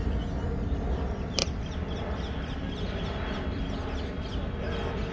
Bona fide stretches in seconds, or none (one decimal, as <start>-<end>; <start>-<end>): 0.0-1.4; 3.6-5.1